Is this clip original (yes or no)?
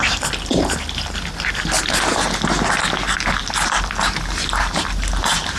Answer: yes